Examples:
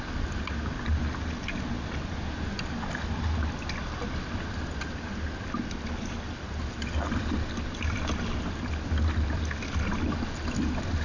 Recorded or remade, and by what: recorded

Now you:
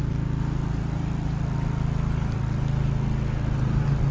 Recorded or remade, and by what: recorded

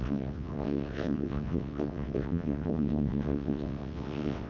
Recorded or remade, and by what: remade, vocoder, WaveNeXt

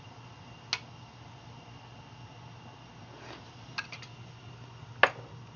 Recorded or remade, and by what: recorded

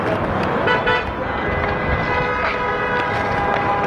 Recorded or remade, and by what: recorded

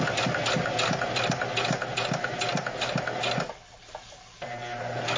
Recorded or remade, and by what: recorded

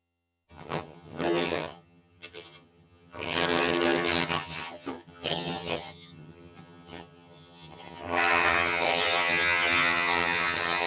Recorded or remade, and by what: remade, vocoder, HiFi-GAN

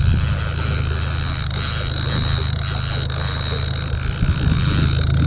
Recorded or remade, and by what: recorded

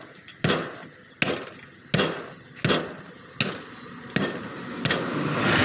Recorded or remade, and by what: recorded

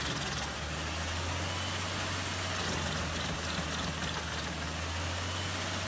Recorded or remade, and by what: recorded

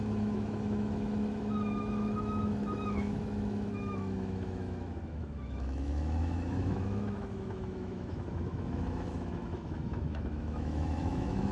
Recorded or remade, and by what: remade, autoencoder, DAC-VAE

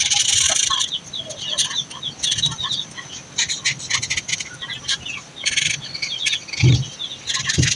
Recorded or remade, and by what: recorded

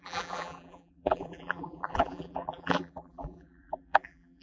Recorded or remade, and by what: remade, vocoder, BigVGAN v2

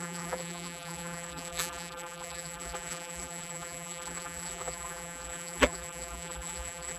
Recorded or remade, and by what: remade, vocoder, BigVGAN v2